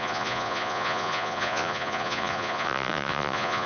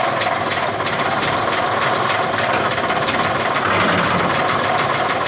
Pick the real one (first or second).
second